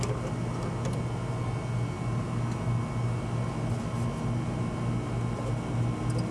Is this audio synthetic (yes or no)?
no